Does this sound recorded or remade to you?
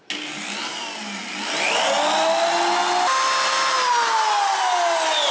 recorded